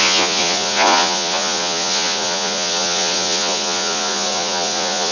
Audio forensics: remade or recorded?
remade